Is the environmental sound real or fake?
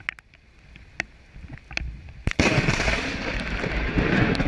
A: real